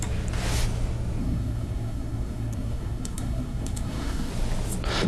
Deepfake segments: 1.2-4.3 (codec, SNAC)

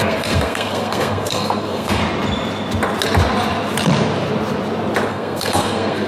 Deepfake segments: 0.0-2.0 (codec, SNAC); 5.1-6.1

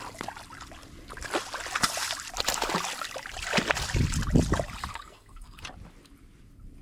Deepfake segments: 4.9-5.6 (codec, SNAC)

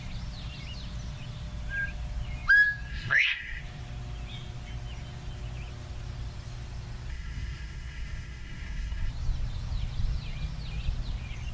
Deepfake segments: 2.9-3.6 (codec, SNAC); 7.1-9.1